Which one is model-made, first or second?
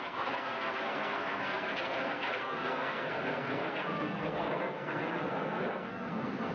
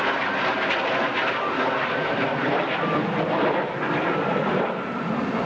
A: first